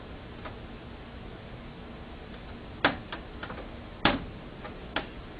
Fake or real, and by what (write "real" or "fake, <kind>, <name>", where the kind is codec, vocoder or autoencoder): real